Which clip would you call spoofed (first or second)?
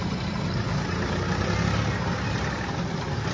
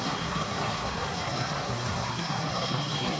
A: second